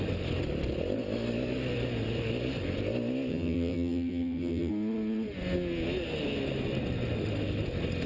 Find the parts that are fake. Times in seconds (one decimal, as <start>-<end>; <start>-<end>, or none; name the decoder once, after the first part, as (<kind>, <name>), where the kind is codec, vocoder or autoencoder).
3.3-4.7 (vocoder, HiFi-GAN)